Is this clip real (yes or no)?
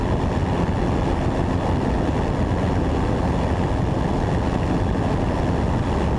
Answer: yes